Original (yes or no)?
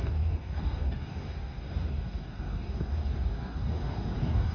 no